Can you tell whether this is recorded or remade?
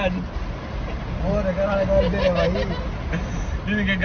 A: recorded